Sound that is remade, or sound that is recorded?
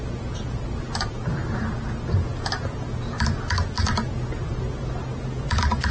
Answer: recorded